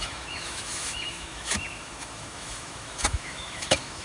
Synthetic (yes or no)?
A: yes